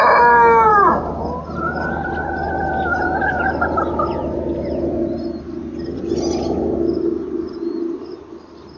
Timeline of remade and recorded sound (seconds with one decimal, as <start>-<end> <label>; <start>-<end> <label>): 0.0-8.8 recorded